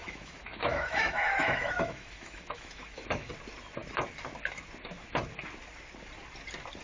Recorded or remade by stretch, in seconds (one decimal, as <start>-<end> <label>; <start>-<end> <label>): 0.0-3.3 remade; 3.3-6.8 recorded